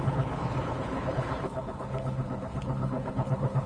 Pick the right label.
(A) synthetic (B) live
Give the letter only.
A